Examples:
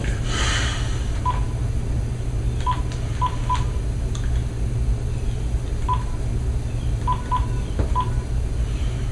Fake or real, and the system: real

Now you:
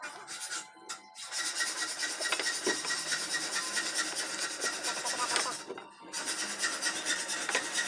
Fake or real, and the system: real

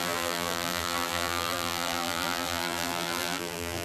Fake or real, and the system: fake, vocoder, BigVGAN v2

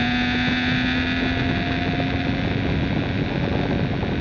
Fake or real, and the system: real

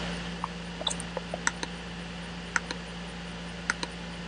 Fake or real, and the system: real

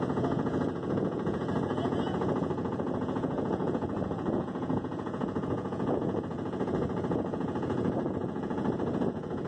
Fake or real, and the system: fake, vocoder, Vocos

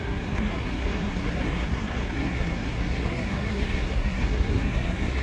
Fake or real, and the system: fake, codec, SNAC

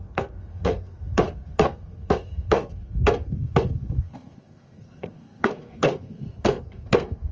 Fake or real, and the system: fake, codec, SNAC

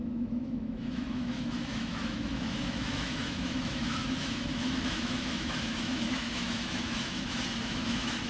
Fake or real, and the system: fake, autoencoder, DAC-VAE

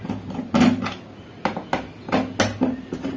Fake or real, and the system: real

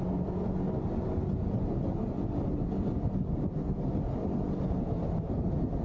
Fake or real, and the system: real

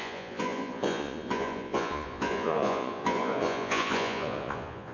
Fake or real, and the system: fake, vocoder, Vocos